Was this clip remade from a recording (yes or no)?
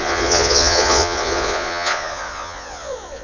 yes